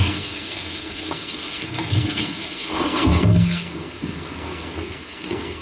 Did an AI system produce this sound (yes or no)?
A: yes